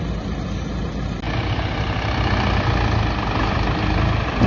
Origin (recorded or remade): recorded